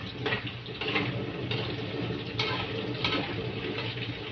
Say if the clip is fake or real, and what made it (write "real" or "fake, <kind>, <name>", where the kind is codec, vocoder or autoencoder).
real